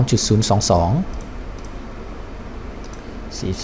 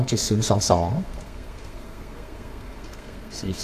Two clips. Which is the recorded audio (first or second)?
first